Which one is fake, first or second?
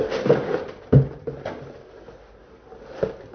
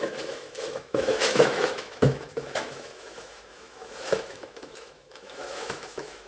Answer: second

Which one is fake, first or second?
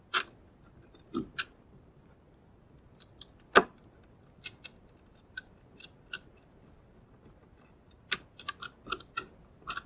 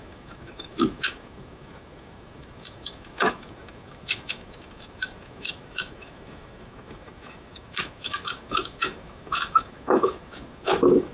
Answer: second